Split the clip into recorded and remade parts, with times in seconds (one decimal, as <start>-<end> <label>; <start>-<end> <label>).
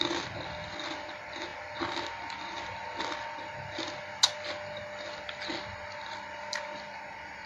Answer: 0.0-7.5 recorded